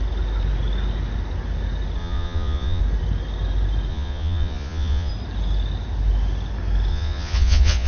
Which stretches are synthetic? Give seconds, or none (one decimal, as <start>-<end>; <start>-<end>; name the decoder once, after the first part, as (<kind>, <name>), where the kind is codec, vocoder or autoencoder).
2.0-2.8 (vocoder, Vocos); 3.9-5.1; 6.9-7.9